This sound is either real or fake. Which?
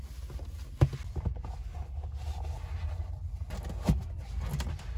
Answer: real